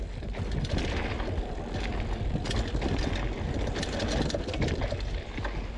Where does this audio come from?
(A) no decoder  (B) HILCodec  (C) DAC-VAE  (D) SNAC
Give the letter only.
A